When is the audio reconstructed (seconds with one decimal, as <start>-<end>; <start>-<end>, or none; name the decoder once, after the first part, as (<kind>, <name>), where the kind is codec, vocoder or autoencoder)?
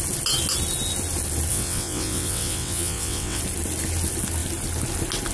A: 1.5-3.4 (vocoder, WaveNeXt)